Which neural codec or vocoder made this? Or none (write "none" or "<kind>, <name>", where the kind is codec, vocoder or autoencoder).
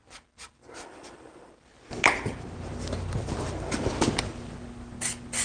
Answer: none